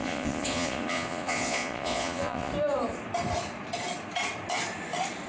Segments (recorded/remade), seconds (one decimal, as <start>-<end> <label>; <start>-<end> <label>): 0.0-2.5 remade; 2.5-5.3 recorded